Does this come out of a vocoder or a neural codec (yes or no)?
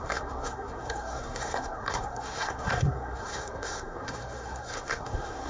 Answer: yes